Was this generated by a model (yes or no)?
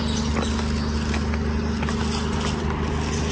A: no